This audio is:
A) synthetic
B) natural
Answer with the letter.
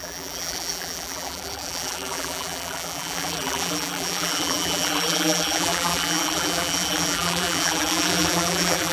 A